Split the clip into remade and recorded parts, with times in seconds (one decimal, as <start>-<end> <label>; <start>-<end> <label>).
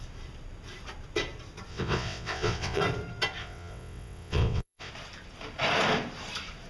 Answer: 0.0-1.7 recorded; 1.7-2.8 remade; 2.8-3.4 recorded; 3.4-4.9 remade; 4.9-6.7 recorded